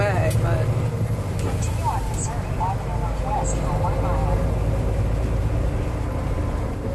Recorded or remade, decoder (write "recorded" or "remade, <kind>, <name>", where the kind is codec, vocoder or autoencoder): recorded